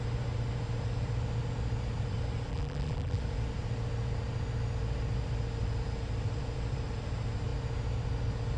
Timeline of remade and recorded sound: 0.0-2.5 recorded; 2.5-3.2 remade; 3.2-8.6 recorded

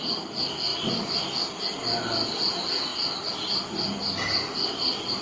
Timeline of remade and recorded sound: 0.0-0.7 recorded; 0.7-1.3 remade; 1.3-5.2 recorded

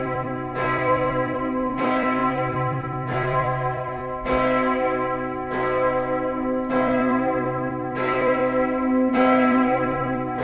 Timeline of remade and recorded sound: 0.0-4.0 remade; 4.0-6.7 recorded; 6.7-8.4 remade; 8.4-9.1 recorded; 9.1-10.4 remade

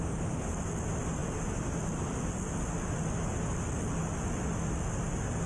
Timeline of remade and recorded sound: 0.0-5.5 recorded

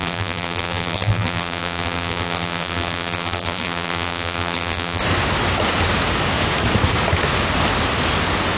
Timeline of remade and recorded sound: 0.0-5.0 remade; 5.0-8.6 recorded

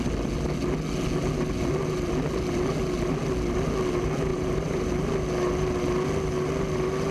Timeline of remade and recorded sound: 0.0-4.3 recorded; 4.3-4.9 remade; 4.9-7.1 recorded

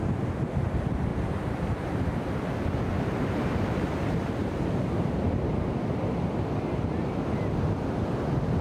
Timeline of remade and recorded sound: 0.0-1.1 recorded; 1.1-5.1 remade; 5.1-8.6 recorded

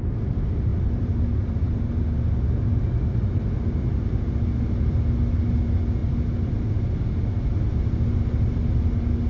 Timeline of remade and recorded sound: 0.0-0.7 recorded; 0.7-1.8 remade; 1.8-9.3 recorded